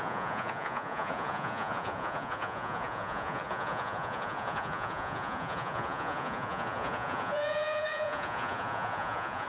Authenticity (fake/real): fake